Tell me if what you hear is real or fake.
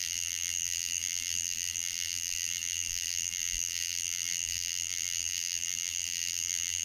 fake